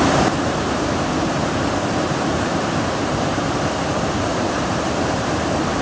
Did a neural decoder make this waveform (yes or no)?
yes